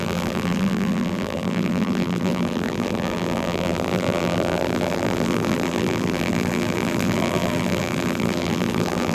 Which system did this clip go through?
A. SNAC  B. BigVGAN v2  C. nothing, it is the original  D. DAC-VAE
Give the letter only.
B